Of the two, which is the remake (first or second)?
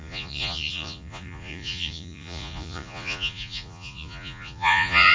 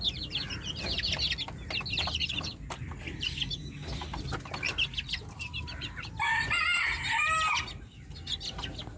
first